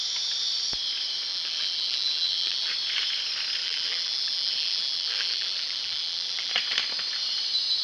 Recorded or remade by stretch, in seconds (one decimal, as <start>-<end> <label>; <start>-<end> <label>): 0.0-1.3 recorded; 1.3-2.7 remade; 2.7-3.6 recorded; 3.6-6.5 remade; 6.5-7.8 recorded